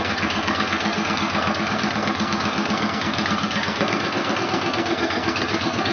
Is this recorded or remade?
remade